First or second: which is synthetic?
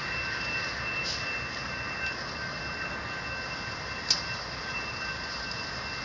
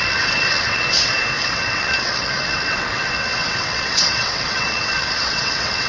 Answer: second